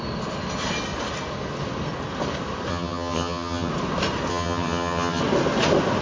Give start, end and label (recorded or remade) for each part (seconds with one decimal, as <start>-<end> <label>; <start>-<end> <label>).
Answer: 0.0-2.7 recorded; 2.7-3.7 remade; 3.7-4.3 recorded; 4.3-5.2 remade; 5.2-6.0 recorded

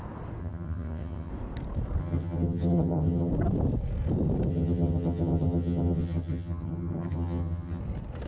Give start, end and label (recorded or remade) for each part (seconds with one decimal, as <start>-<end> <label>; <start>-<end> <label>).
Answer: 0.0-0.4 recorded; 0.4-1.3 remade; 1.3-2.0 recorded; 2.0-3.3 remade; 3.3-4.5 recorded; 4.5-7.8 remade; 7.8-8.3 recorded

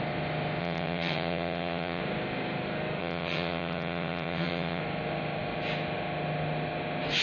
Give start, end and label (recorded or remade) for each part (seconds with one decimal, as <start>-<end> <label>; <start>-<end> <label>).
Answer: 0.0-0.6 recorded; 0.6-2.0 remade; 2.0-3.0 recorded; 3.0-4.8 remade; 4.8-7.2 recorded

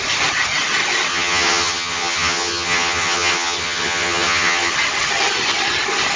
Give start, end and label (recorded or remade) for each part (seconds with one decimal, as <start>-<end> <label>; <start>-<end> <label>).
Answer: 0.0-1.1 recorded; 1.1-4.7 remade; 4.7-6.2 recorded

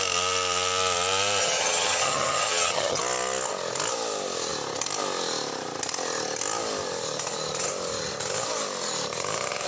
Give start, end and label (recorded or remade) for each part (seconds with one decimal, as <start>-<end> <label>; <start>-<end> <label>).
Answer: 0.0-1.4 recorded; 1.4-3.0 remade; 3.0-9.7 recorded